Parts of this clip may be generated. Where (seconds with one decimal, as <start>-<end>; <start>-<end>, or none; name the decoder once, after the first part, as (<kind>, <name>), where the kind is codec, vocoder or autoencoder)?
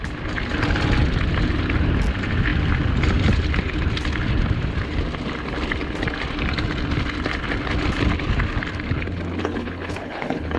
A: 9.4-10.6 (codec, HILCodec)